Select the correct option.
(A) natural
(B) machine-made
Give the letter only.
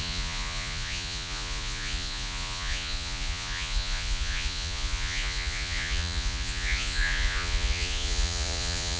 B